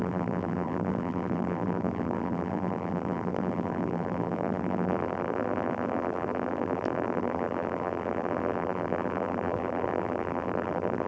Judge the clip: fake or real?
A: fake